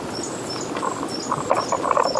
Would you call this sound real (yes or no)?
yes